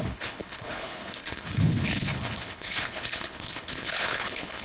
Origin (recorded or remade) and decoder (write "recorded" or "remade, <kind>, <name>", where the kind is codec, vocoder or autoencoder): remade, codec, HILCodec